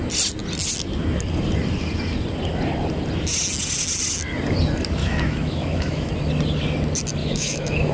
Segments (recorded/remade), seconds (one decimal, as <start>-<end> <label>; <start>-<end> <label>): 0.0-5.0 recorded; 5.0-6.1 remade; 6.1-7.2 recorded; 7.2-7.9 remade